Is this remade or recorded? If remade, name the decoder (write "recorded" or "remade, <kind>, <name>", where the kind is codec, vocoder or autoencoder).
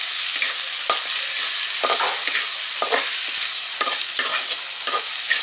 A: recorded